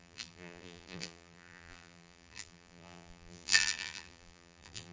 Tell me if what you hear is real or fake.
fake